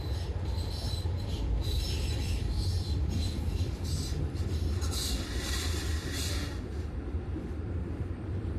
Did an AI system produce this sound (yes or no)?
yes